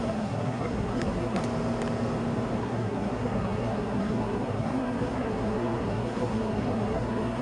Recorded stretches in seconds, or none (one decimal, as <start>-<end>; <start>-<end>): 1.4-2.6